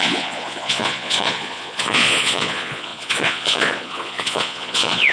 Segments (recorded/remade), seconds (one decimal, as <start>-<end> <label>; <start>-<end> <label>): 0.0-5.1 remade